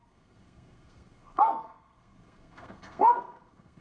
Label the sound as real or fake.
fake